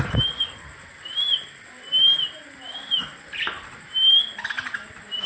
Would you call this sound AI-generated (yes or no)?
no